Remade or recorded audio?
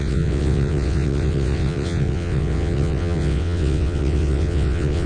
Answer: remade